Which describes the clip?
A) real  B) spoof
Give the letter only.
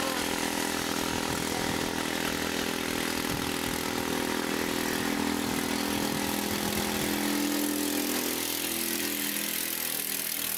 A